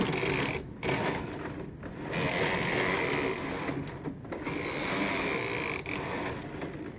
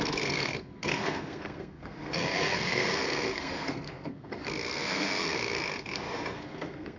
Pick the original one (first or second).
first